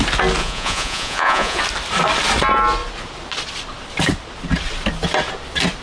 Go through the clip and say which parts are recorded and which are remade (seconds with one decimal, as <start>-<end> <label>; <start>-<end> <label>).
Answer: 0.0-0.4 recorded; 0.4-1.6 remade; 1.6-5.8 recorded